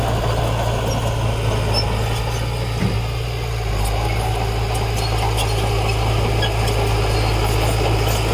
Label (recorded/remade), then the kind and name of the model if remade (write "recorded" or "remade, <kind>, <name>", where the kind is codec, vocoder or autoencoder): recorded